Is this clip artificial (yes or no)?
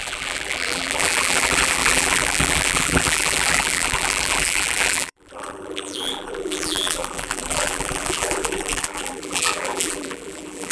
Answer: yes